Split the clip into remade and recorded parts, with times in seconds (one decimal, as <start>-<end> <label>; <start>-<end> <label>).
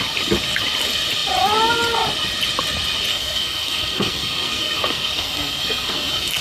0.0-3.1 recorded; 3.1-6.4 remade